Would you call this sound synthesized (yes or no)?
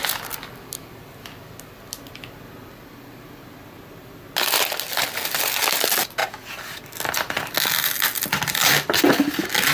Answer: no